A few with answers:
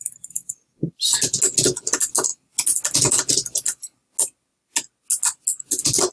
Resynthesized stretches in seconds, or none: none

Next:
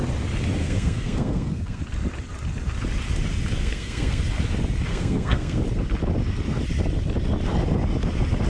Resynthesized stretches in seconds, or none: 0.6-1.8 (codec, SNAC); 3.6-4.2; 4.9-5.6

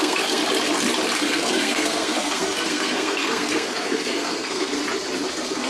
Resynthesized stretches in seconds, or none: 0.0-0.4 (codec, SNAC); 1.2-4.8; 5.3-5.7